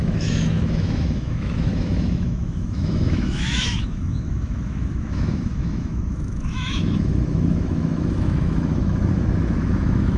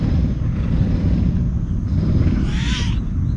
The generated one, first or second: first